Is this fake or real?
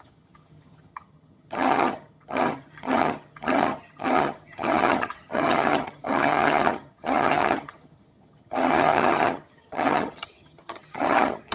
fake